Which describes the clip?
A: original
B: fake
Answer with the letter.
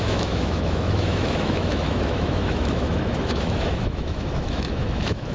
B